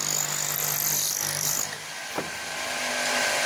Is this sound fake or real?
real